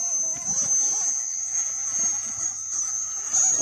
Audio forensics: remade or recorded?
recorded